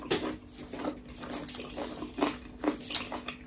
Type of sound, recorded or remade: recorded